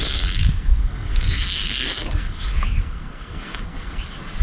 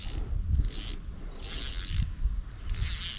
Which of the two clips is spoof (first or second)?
first